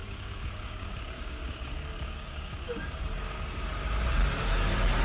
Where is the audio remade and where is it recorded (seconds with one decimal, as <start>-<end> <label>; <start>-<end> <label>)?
0.0-3.0 remade; 3.0-5.0 recorded